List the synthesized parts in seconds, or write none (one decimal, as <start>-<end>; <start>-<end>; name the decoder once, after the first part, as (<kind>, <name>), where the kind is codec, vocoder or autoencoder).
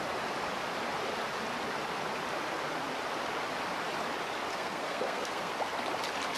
4.5-5.5 (codec, SNAC)